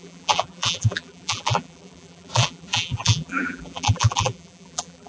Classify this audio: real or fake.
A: fake